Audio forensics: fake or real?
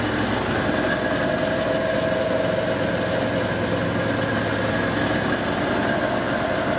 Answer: real